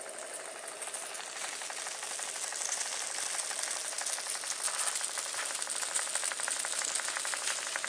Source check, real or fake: real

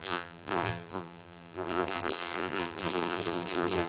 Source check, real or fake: fake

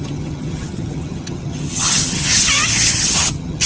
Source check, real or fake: fake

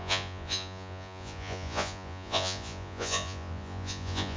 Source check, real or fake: fake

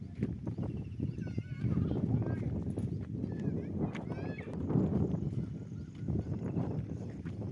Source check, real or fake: real